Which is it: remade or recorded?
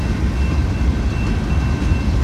recorded